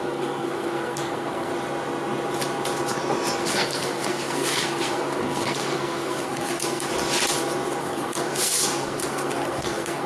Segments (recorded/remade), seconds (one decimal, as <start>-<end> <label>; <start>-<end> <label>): 0.0-1.5 remade; 1.5-3.4 recorded; 3.4-6.9 remade; 6.9-7.8 recorded; 7.8-10.1 remade